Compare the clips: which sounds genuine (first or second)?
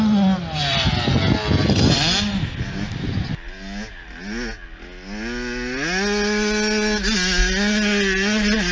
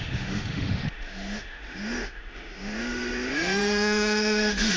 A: first